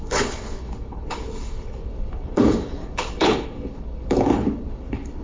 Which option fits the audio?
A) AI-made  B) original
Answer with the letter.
A